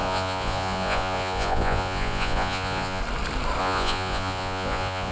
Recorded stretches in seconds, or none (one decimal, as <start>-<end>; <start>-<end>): 3.0-3.6